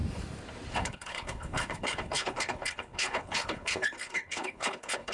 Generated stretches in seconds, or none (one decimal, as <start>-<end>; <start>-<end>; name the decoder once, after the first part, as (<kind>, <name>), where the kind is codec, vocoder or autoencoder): 0.7-5.1 (codec, HILCodec)